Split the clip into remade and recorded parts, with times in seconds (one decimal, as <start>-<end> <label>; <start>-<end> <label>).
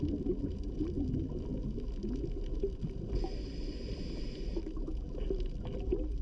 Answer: 0.0-6.2 recorded